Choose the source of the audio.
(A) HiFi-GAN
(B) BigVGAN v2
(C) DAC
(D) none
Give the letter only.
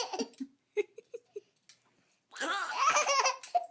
D